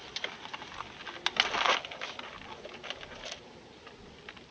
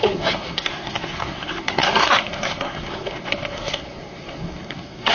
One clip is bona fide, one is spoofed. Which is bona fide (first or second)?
first